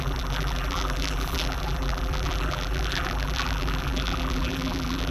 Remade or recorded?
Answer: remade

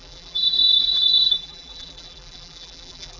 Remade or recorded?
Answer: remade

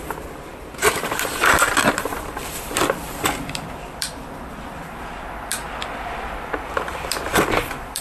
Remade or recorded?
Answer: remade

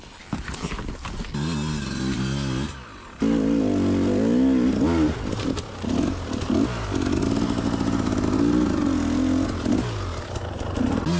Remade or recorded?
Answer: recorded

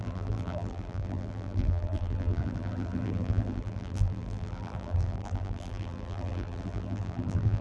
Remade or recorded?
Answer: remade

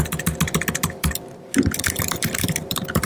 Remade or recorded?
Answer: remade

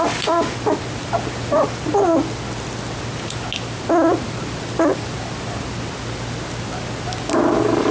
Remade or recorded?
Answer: recorded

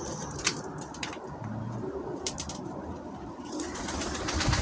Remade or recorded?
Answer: remade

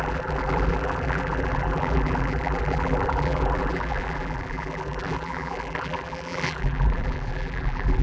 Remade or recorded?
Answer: remade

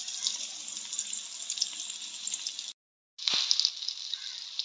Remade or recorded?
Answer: recorded